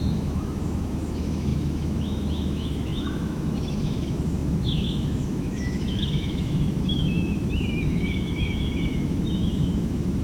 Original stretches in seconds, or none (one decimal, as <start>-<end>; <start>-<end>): none